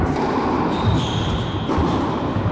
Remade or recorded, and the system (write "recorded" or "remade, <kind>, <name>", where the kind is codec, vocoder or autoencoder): remade, vocoder, BigVGAN v2